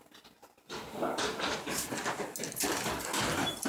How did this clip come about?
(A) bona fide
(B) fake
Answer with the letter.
A